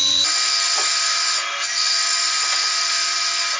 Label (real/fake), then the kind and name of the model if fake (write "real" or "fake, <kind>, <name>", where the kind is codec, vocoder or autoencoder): real